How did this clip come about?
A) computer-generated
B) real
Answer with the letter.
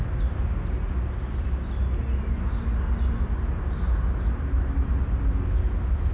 B